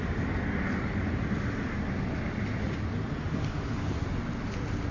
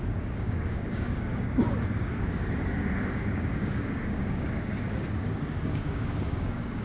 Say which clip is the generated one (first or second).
second